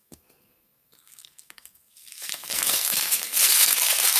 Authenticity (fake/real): fake